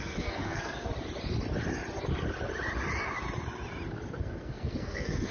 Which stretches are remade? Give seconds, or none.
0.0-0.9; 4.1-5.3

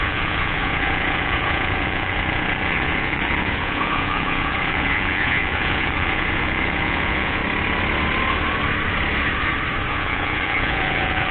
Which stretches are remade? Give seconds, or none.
0.0-7.4; 9.9-11.3